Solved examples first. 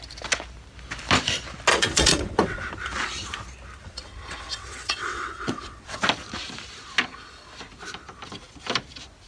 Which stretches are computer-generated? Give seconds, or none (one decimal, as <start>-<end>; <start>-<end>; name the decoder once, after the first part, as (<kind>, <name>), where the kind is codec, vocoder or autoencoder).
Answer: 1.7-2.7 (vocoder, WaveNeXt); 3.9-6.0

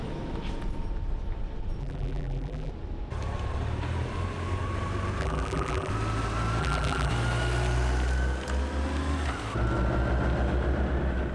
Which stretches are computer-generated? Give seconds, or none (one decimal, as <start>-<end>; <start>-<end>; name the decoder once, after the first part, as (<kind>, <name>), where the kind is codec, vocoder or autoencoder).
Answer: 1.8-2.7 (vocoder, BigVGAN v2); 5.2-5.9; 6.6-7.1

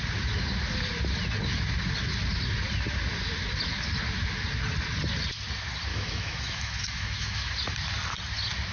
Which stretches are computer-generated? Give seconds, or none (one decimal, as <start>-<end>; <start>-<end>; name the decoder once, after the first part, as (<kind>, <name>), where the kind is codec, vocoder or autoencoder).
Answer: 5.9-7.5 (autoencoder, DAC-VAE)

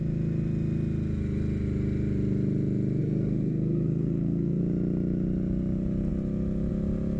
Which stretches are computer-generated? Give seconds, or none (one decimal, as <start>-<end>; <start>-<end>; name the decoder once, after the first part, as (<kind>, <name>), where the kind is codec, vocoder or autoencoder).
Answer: 3.0-4.6 (codec, SNAC)

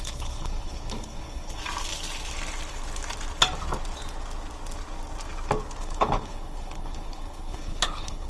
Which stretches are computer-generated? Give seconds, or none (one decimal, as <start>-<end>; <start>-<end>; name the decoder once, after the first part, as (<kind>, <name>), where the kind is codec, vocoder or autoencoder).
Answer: 0.0-1.6 (codec, HILCodec); 5.8-8.3

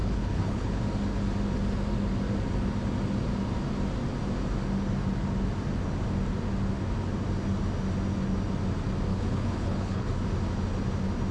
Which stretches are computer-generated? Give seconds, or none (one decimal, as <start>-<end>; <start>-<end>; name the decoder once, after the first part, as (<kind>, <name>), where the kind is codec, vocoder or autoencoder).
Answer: 0.0-0.8 (codec, HILCodec); 9.1-10.2

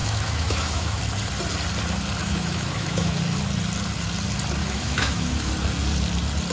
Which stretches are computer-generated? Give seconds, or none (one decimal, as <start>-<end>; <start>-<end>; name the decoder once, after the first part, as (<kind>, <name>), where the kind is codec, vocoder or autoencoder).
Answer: 0.0-1.0 (autoencoder, DAC-VAE); 2.2-3.2; 4.6-5.5

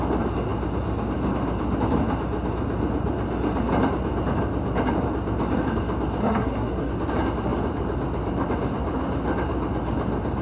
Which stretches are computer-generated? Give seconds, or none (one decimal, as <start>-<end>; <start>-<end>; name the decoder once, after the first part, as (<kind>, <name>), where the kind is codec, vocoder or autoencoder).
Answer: 6.2-6.9 (codec, SNAC)